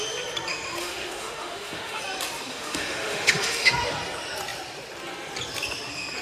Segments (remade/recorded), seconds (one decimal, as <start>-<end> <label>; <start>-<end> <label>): 0.0-0.8 recorded; 0.8-2.0 remade; 2.0-2.5 recorded; 2.5-3.7 remade; 3.7-6.2 recorded